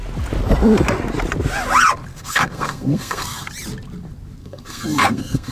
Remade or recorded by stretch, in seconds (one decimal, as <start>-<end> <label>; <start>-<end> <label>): 0.0-2.1 recorded; 2.1-3.5 remade; 3.5-4.4 recorded; 4.4-5.5 remade